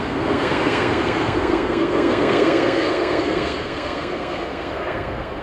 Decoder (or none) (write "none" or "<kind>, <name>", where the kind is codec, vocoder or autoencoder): codec, SNAC